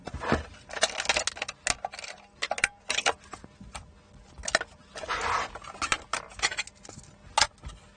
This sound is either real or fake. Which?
real